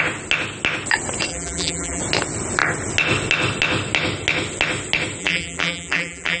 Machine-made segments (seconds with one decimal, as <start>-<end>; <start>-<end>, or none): 1.3-2.0; 5.2-6.4